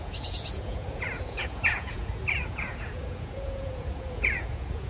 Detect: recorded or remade remade